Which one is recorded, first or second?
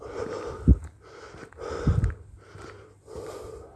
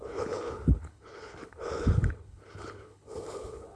first